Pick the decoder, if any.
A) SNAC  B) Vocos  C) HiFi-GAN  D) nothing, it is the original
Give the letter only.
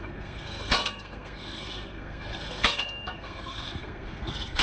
A